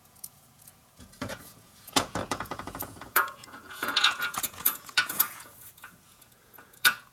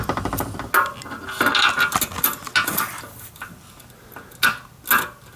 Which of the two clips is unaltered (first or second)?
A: second